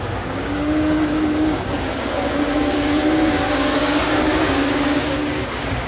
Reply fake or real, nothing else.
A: fake